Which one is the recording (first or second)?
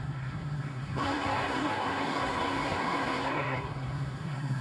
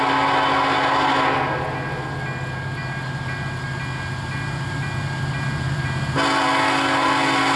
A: second